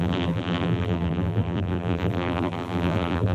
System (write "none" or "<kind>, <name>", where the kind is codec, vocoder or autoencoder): vocoder, BigVGAN v2